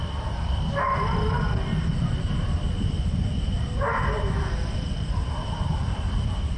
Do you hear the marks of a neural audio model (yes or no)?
no